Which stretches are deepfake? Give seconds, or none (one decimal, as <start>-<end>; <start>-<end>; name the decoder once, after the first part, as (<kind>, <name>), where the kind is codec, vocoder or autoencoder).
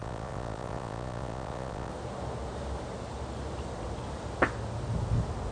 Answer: 0.0-1.9 (vocoder, Vocos)